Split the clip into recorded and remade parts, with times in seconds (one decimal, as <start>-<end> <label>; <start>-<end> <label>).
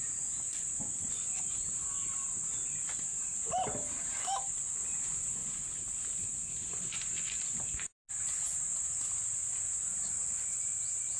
0.0-11.2 recorded